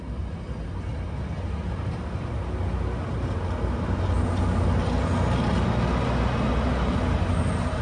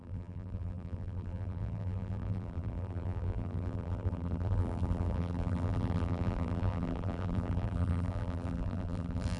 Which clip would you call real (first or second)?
first